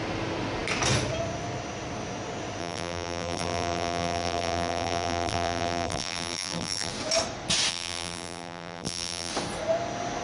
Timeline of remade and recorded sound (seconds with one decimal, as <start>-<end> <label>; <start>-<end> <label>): 0.0-2.6 recorded; 2.6-6.9 remade; 6.9-7.7 recorded; 7.7-9.3 remade; 9.3-10.2 recorded